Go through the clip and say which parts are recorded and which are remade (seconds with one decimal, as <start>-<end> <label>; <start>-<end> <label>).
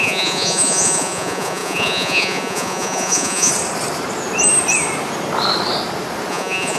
0.0-3.5 remade; 3.5-6.3 recorded; 6.3-6.8 remade